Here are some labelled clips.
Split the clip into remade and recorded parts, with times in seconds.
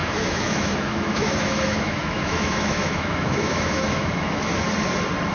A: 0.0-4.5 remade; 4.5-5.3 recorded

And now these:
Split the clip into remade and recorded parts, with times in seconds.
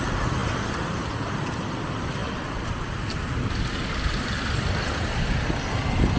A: 0.0-6.2 recorded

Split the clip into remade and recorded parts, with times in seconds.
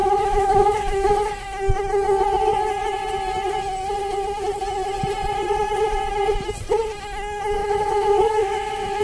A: 0.0-1.1 remade; 1.1-7.6 recorded; 7.6-9.0 remade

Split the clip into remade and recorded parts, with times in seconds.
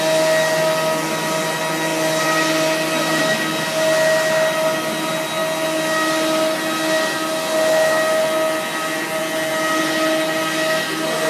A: 0.0-11.3 recorded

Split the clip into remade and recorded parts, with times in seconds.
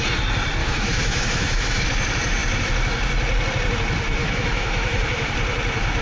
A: 0.0-0.6 recorded; 0.6-1.8 remade; 1.8-4.2 recorded; 4.2-5.3 remade; 5.3-6.0 recorded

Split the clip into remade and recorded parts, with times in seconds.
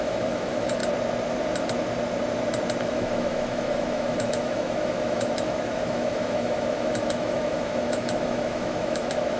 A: 0.0-0.8 remade; 0.8-2.8 recorded; 2.8-9.4 remade